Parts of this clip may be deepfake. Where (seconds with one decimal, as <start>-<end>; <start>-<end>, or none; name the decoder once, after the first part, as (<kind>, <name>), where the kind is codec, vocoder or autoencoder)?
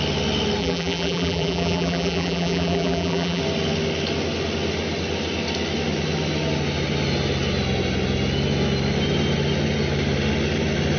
0.6-3.4 (vocoder, BigVGAN v2)